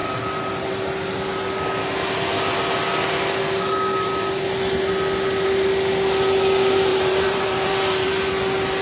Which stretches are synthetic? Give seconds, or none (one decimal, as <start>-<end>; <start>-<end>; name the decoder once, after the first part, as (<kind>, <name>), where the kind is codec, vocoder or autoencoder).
6.9-8.3 (vocoder, BigVGAN v2)